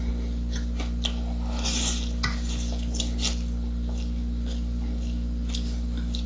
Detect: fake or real real